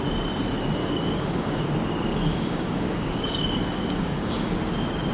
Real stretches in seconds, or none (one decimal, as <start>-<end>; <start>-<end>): 0.0-0.8; 1.6-2.1; 4.5-5.1